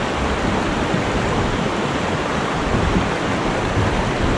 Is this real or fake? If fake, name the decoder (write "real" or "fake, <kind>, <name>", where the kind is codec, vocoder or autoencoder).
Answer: real